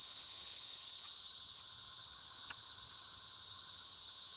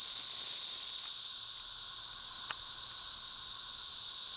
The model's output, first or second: first